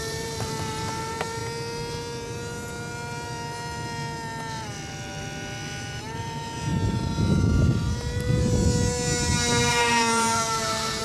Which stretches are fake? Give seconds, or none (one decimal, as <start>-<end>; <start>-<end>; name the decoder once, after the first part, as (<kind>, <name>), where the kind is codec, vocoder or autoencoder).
0.0-1.4 (vocoder, BigVGAN v2); 5.8-6.7; 9.7-11.0